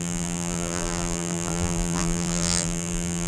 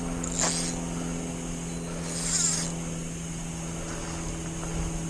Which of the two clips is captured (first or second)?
second